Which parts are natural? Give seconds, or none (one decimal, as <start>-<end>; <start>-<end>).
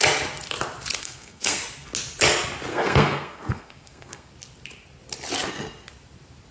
0.0-1.0; 1.6-2.7; 4.3-6.5